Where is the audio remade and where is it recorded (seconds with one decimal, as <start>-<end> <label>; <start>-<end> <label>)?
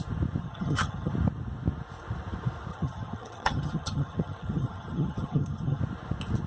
0.0-0.4 recorded; 0.4-1.1 remade; 1.1-2.7 recorded; 2.7-5.8 remade; 5.8-6.5 recorded